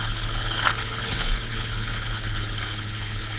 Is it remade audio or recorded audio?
remade